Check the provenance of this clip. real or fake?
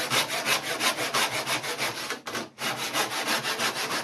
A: real